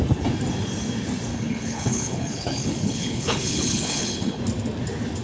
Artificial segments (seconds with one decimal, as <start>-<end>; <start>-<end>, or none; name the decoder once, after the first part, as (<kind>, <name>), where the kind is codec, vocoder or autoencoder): 1.3-4.4 (codec, HILCodec)